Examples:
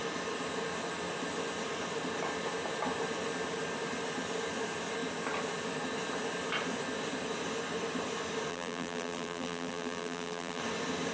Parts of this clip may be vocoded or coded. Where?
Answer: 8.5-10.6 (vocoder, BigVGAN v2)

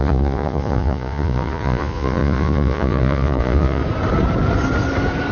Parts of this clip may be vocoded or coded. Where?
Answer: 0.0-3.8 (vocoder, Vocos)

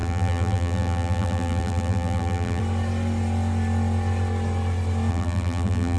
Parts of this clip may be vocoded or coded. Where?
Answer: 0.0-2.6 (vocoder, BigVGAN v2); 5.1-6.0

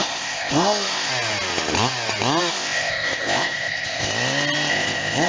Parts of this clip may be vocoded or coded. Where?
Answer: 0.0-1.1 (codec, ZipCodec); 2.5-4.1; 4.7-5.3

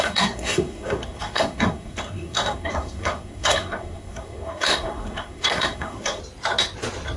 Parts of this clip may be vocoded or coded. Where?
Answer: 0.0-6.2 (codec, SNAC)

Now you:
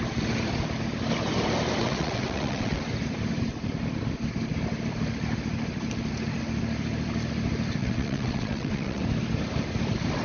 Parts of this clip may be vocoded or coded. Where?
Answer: 1.8-2.8 (vocoder, WaveNeXt); 7.8-9.0